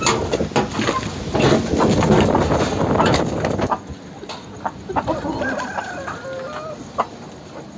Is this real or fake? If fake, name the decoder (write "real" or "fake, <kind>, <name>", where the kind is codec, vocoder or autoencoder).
real